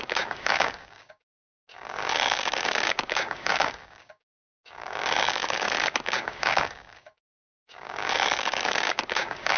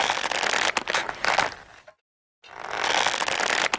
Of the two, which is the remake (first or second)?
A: first